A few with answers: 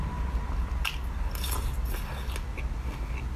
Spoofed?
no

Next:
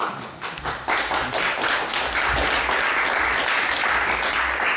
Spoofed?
no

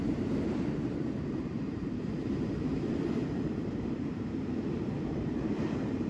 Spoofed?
yes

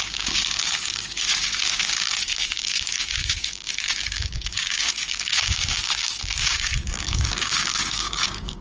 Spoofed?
yes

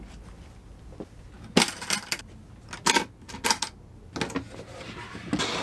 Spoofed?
no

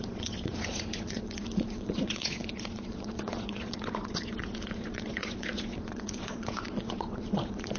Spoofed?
yes